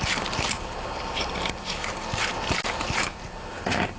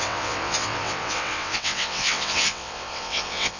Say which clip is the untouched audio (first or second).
first